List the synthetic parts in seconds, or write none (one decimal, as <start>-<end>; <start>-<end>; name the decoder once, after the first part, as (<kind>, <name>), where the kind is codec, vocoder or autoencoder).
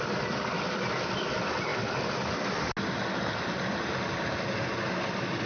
none